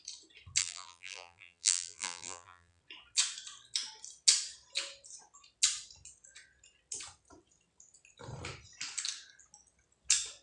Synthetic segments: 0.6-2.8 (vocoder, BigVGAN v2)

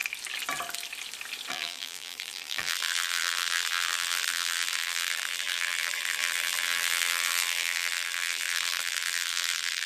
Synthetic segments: 1.5-9.9 (vocoder, BigVGAN v2)

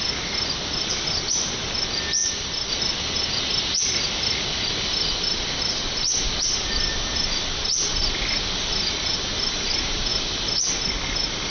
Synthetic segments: 2.2-2.7 (vocoder, BigVGAN v2)

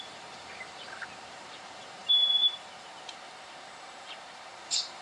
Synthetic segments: 0.0-5.0 (vocoder, BigVGAN v2)